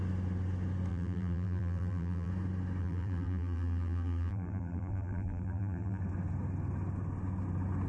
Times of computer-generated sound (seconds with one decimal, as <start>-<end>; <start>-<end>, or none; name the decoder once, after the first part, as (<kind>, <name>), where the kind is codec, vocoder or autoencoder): 0.9-2.3 (vocoder, BigVGAN v2); 2.8-6.0

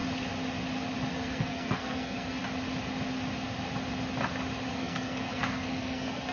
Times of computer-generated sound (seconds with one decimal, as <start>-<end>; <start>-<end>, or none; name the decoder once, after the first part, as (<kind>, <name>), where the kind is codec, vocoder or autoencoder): 1.1-2.4 (codec, SNAC); 4.7-6.3

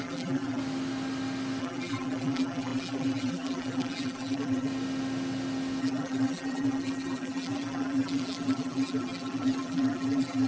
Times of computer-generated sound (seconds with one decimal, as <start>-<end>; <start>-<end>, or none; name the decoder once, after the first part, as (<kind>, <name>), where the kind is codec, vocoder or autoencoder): 0.0-0.6 (vocoder, BigVGAN v2); 1.6-4.7; 5.8-10.5

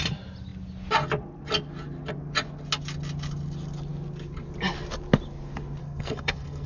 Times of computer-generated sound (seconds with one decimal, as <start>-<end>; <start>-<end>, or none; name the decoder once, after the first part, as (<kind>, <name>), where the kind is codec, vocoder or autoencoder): 5.8-6.7 (codec, SNAC)

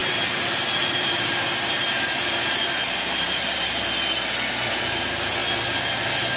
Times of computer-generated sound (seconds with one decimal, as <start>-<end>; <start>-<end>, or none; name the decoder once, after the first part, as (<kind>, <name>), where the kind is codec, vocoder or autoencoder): 0.0-3.8 (vocoder, BigVGAN v2)